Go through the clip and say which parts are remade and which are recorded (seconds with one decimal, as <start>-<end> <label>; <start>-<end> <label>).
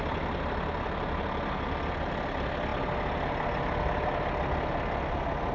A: 0.0-5.5 recorded